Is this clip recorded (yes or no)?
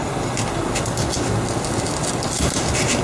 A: yes